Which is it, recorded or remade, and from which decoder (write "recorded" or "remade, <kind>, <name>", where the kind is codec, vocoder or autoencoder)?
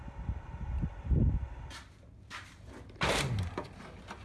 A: recorded